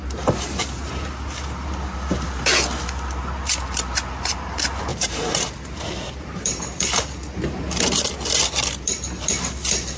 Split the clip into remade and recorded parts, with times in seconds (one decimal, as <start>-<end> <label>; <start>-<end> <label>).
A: 0.0-0.9 remade; 0.9-4.9 recorded; 4.9-8.1 remade; 8.1-10.0 recorded

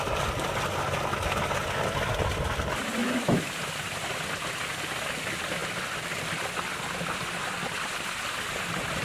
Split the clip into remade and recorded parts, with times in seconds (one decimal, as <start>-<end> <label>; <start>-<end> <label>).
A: 0.0-3.0 recorded; 3.0-3.5 remade; 3.5-9.0 recorded

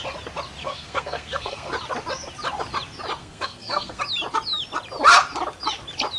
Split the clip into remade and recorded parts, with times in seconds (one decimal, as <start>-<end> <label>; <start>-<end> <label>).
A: 0.0-0.6 recorded; 0.6-1.7 remade; 1.7-3.2 recorded; 3.2-4.0 remade; 4.0-6.2 recorded